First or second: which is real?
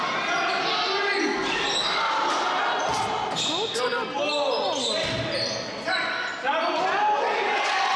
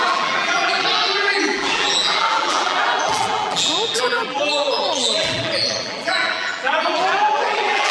first